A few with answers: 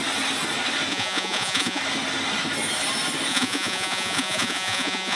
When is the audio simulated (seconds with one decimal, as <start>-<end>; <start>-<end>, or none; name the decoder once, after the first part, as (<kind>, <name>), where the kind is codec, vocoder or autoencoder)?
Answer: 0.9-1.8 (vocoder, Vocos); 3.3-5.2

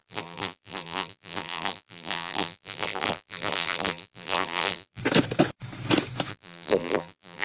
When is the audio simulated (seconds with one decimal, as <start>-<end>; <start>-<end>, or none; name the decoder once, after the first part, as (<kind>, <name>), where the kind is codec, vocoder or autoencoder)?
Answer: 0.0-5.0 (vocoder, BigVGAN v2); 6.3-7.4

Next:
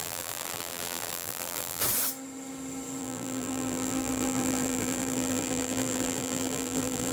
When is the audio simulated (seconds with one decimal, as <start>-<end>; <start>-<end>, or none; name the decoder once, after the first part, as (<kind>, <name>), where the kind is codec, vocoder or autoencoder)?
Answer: 0.0-1.8 (vocoder, BigVGAN v2); 3.0-7.1

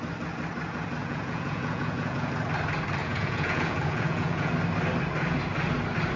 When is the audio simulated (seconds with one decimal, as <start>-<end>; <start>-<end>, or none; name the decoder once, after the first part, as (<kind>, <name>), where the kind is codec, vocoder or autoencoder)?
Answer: 1.0-2.3 (vocoder, Vocos); 3.0-4.5